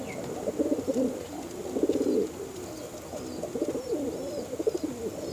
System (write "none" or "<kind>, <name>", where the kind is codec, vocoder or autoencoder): none